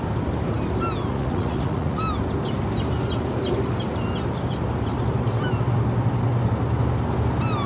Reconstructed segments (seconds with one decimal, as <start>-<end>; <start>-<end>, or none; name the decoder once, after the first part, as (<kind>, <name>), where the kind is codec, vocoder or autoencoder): 1.1-2.0 (vocoder, Vocos)